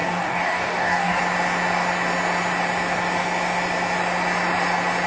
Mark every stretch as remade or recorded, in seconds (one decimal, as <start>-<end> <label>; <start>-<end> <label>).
0.0-1.2 remade; 1.2-5.1 recorded